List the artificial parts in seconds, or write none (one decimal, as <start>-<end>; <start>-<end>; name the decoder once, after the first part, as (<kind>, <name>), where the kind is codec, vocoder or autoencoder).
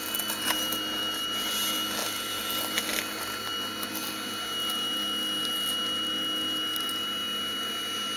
none